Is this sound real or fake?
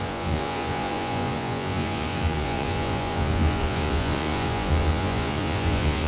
fake